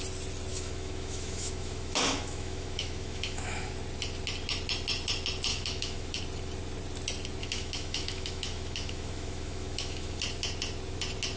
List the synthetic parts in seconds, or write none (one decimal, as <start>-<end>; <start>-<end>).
0.5-3.7; 5.5-6.2; 7.4-10.2